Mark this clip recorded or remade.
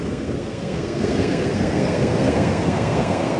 remade